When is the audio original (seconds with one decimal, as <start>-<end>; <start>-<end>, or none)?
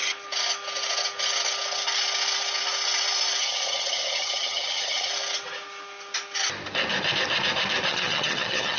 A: 0.0-3.4; 5.1-7.9